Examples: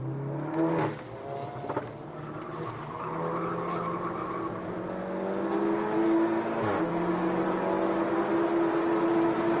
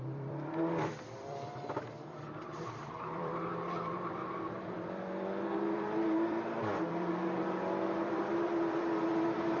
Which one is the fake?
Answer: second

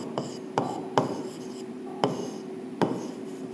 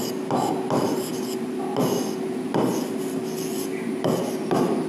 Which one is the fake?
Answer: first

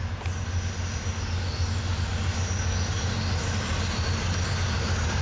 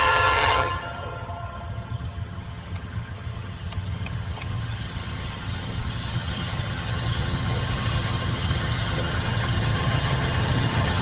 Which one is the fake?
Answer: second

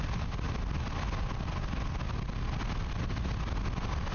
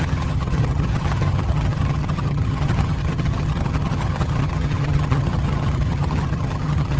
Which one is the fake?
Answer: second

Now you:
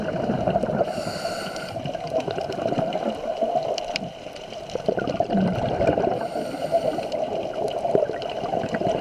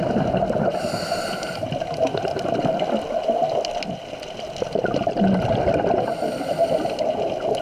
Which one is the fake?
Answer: first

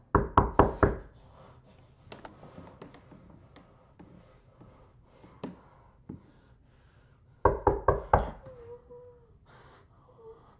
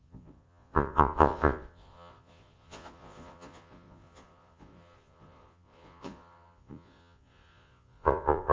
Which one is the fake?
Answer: second